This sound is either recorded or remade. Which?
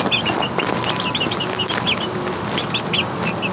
recorded